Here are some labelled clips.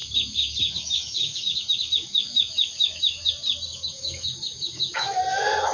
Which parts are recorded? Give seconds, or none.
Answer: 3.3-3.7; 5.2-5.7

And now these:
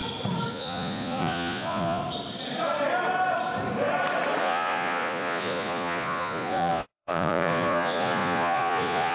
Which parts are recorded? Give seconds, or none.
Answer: 0.0-0.5; 2.0-4.4

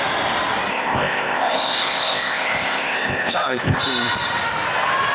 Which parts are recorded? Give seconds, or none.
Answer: 0.0-0.7; 3.8-5.1

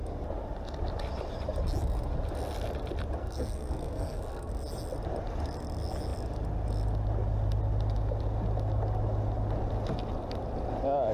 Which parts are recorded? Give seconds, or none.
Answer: 0.0-3.2; 4.5-11.1

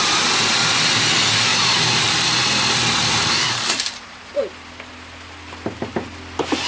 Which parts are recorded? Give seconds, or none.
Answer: 0.0-1.5; 4.3-6.7

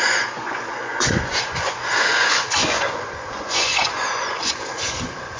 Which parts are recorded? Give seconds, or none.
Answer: none

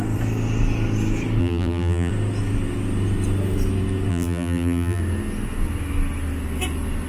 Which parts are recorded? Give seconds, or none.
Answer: 0.0-1.4; 2.1-4.1; 5.0-7.1